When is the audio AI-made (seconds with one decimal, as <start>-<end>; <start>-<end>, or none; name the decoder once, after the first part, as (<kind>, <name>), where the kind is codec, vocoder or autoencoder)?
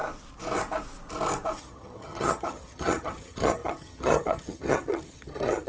1.6-5.7 (vocoder, HiFi-GAN)